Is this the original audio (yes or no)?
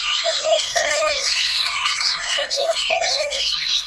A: no